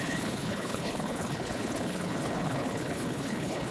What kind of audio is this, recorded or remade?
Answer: remade